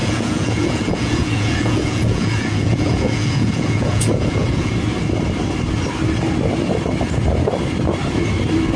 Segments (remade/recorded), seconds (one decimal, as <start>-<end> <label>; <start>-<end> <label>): 0.0-4.7 remade; 4.7-8.8 recorded